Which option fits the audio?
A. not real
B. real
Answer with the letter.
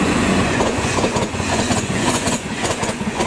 A